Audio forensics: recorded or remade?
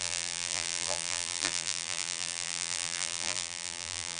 remade